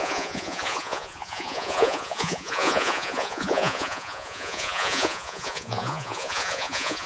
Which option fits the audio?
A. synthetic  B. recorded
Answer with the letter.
A